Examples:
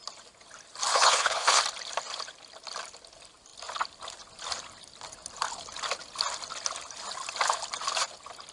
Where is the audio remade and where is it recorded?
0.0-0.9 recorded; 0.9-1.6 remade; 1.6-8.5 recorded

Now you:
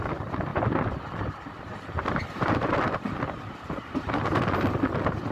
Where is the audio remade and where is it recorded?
0.0-0.5 recorded; 0.5-3.7 remade; 3.7-5.3 recorded